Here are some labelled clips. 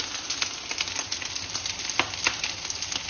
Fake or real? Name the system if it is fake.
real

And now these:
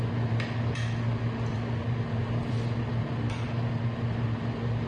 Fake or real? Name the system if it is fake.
real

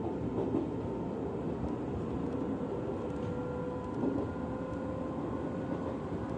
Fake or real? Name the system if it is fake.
real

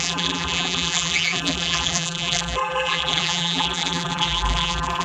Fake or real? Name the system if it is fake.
fake, vocoder, BigVGAN v2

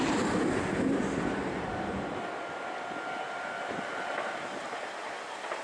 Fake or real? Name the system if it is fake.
fake, vocoder, BigVGAN v2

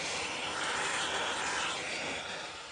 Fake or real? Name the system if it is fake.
real